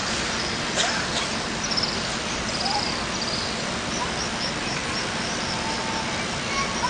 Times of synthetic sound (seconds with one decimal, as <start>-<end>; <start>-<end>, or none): none